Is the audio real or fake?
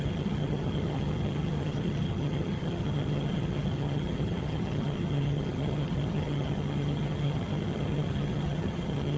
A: fake